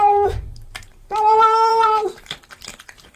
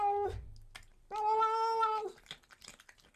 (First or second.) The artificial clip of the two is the first